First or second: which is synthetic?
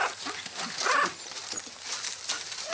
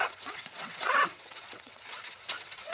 second